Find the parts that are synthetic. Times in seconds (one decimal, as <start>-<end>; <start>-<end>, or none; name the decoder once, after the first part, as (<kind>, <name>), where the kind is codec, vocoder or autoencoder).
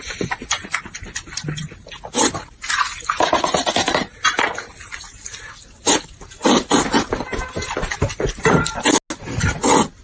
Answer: none